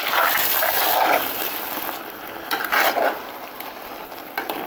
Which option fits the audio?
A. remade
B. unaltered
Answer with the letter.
A